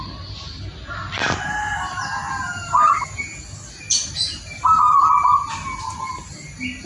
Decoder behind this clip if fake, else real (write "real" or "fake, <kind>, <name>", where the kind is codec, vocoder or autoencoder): real